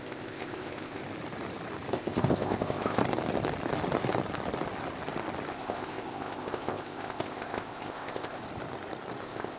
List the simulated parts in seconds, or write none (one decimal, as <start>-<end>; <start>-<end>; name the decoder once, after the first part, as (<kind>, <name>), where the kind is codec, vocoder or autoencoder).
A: 0.0-1.0 (codec, ZipCodec); 1.9-3.0; 5.5-8.4; 9.2-9.6